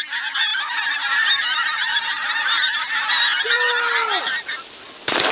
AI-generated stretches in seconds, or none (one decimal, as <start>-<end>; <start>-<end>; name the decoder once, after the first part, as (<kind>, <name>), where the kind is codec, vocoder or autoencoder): none